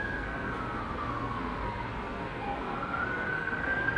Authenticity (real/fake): fake